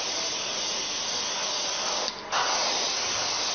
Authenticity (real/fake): real